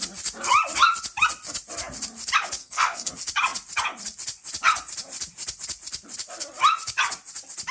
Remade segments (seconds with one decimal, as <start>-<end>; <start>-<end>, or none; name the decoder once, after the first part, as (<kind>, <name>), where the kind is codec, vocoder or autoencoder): 2.6-3.1 (codec, SNAC)